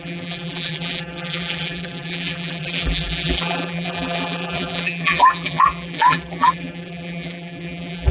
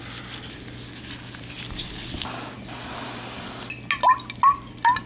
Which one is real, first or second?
second